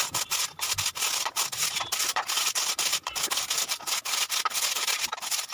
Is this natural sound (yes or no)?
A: yes